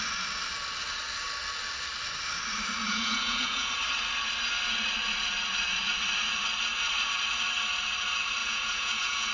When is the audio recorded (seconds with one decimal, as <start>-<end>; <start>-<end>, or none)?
0.0-2.8; 3.7-8.4